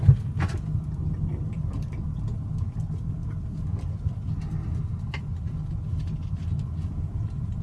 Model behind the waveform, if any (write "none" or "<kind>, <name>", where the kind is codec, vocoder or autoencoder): none